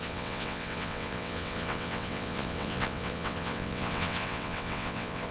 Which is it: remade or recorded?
remade